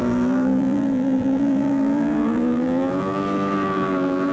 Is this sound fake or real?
fake